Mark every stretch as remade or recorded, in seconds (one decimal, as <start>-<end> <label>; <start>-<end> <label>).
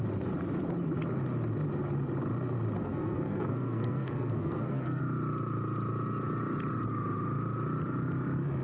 0.0-2.8 recorded; 2.8-5.0 remade; 5.0-8.6 recorded